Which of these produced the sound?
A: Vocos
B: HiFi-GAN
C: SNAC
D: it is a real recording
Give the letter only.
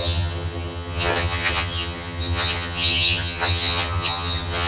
B